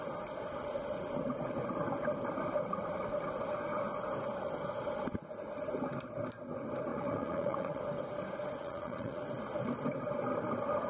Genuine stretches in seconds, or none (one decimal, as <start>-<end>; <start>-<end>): 0.0-6.9; 7.8-8.6; 9.2-10.9